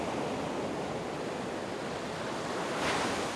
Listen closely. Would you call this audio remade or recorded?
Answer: recorded